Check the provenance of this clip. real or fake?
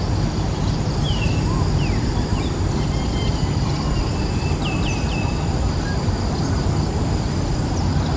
real